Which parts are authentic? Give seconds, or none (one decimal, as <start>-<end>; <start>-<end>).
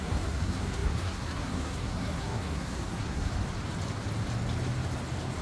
3.3-5.4